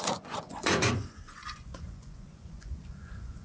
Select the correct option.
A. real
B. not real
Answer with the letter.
B